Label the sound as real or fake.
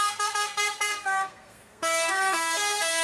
fake